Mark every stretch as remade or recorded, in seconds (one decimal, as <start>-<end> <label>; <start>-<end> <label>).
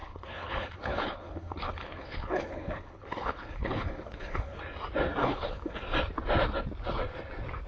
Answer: 0.0-4.6 remade; 4.6-5.2 recorded; 5.2-5.8 remade; 5.8-7.7 recorded